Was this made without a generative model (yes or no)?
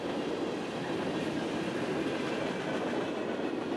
yes